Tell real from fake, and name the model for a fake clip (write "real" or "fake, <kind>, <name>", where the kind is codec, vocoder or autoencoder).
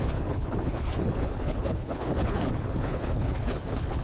fake, codec, HILCodec